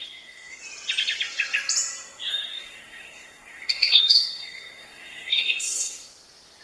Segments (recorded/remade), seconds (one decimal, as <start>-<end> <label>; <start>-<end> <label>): 0.0-0.6 remade; 0.6-2.3 recorded; 2.3-6.1 remade; 6.1-6.6 recorded

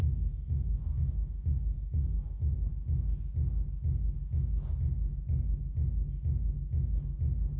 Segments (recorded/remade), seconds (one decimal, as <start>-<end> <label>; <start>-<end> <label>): 0.0-2.7 remade; 2.7-7.6 recorded

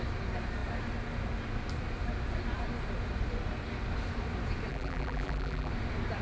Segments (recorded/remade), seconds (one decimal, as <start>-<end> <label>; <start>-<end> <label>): 0.0-4.7 recorded; 4.7-5.7 remade; 5.7-6.2 recorded